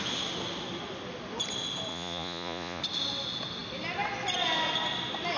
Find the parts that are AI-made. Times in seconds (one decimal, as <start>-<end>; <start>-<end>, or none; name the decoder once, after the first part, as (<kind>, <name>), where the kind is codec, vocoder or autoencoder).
1.9-2.8 (vocoder, Vocos)